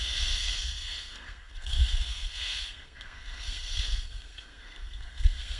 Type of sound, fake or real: fake